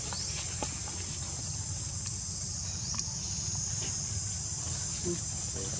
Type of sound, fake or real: real